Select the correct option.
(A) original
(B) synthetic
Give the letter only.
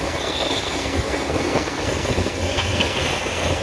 B